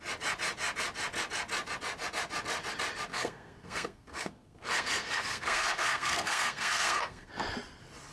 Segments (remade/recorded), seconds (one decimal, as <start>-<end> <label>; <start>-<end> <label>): 0.0-3.1 recorded; 3.1-7.3 remade; 7.3-8.1 recorded